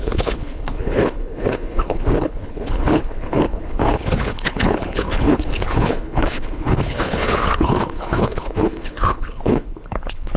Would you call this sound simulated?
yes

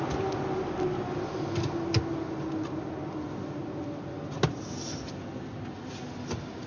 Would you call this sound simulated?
no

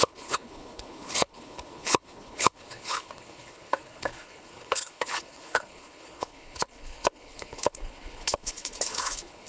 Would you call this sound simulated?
yes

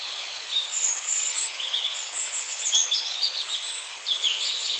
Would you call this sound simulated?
yes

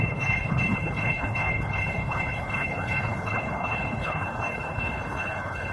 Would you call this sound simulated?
yes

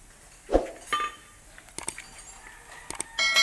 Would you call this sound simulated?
no